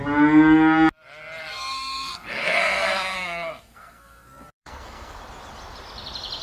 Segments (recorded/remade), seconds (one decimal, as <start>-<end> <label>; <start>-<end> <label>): 0.0-1.4 recorded; 1.4-5.2 remade; 5.2-6.4 recorded